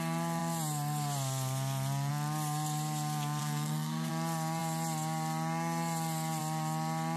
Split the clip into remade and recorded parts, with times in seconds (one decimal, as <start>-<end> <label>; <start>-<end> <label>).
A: 0.0-3.4 recorded; 3.4-4.1 remade; 4.1-7.2 recorded